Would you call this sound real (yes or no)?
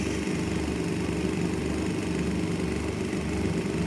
yes